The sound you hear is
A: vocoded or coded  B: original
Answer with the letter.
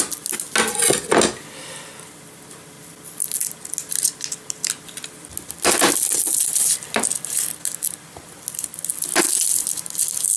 B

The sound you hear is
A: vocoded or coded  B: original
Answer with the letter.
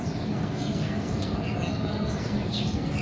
A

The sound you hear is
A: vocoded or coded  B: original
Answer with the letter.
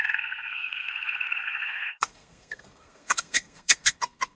A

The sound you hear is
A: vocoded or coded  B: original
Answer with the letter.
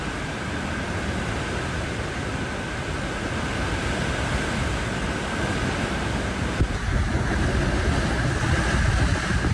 B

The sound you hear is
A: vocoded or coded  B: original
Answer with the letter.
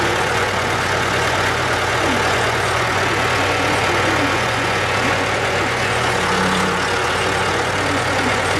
A